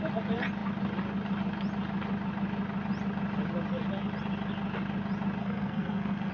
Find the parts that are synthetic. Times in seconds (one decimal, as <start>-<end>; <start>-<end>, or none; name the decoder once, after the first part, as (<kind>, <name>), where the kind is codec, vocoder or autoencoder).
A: 5.4-6.3 (codec, SNAC)

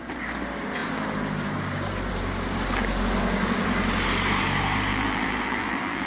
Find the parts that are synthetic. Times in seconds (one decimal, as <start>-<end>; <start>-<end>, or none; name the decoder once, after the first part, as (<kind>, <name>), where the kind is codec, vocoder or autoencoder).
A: 4.9-6.1 (vocoder, BigVGAN v2)

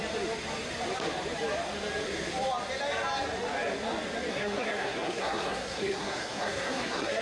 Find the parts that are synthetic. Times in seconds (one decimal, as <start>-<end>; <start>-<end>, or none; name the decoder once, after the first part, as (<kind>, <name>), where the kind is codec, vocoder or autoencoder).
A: 4.3-7.2 (codec, SNAC)

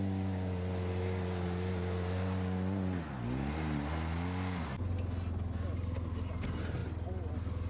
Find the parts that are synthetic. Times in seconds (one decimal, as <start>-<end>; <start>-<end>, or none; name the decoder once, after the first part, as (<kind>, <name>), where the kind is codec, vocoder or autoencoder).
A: none

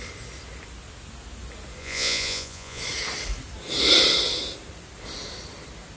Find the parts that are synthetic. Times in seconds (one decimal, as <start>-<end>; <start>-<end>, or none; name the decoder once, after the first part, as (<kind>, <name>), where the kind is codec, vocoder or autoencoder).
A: 1.8-2.8 (vocoder, Vocos)

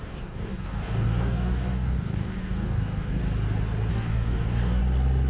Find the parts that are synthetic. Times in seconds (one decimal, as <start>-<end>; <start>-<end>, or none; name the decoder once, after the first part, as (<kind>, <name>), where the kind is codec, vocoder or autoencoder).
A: 0.0-3.2 (codec, DAC); 3.9-4.8